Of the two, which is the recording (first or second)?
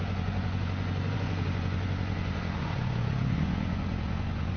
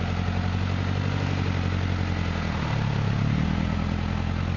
second